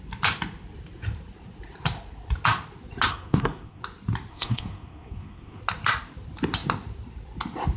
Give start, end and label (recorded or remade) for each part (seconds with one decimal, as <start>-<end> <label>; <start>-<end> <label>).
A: 0.0-3.1 recorded; 3.1-3.8 remade; 3.8-4.3 recorded; 4.3-5.6 remade; 5.6-7.8 recorded